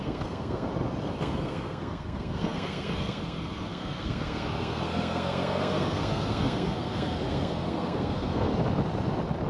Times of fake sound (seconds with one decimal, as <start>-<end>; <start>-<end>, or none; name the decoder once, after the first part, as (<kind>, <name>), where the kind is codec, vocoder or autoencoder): 0.0-0.7 (codec, SNAC); 1.2-8.5